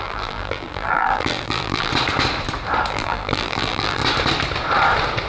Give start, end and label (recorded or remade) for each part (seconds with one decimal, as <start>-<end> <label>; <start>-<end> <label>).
0.0-1.9 remade; 1.9-2.9 recorded; 2.9-4.0 remade; 4.0-5.3 recorded